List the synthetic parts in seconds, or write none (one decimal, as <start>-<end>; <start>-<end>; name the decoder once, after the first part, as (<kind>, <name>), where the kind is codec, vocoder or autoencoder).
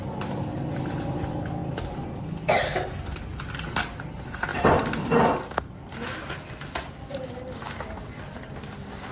1.6-2.4 (vocoder, BigVGAN v2); 4.5-9.1